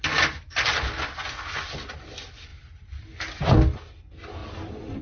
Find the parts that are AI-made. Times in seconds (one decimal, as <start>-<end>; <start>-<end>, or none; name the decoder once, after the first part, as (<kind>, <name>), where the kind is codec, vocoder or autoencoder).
none